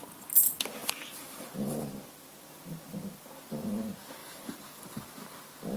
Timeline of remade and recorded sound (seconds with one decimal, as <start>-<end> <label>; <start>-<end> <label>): 0.0-0.8 recorded; 0.8-1.8 remade; 1.8-4.2 recorded; 4.2-4.8 remade; 4.8-5.8 recorded